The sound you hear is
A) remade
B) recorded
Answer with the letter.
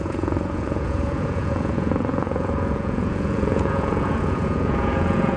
A